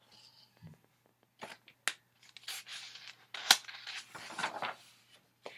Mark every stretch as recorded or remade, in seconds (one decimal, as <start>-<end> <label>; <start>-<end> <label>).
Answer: 0.0-4.4 recorded; 4.4-5.0 remade; 5.0-5.6 recorded